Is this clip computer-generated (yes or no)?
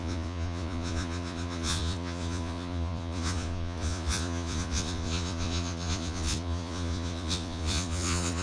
yes